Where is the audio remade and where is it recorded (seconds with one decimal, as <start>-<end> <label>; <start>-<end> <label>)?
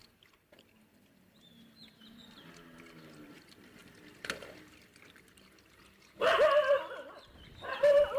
0.0-8.2 remade